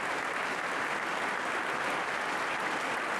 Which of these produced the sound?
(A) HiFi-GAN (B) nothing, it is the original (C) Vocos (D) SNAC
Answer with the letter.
B